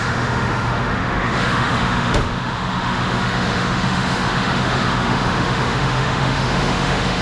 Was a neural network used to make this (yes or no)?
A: yes